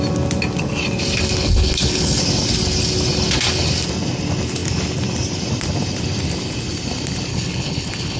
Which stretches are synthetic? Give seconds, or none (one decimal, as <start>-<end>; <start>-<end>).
1.4-2.2; 7.3-8.2